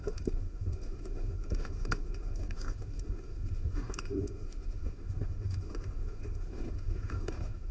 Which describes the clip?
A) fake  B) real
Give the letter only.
A